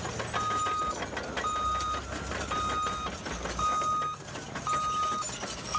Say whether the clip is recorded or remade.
recorded